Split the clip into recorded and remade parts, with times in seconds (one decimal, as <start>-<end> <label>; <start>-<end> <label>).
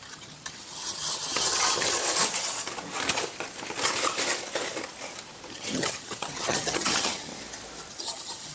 0.0-2.0 remade; 2.0-5.5 recorded; 5.5-7.3 remade; 7.3-7.9 recorded; 7.9-8.5 remade